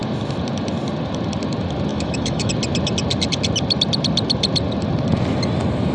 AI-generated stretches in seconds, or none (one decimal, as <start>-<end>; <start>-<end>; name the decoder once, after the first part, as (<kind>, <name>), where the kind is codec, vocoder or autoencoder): 1.9-2.5 (autoencoder, DAC-VAE)